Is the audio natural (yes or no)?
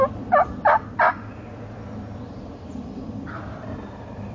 no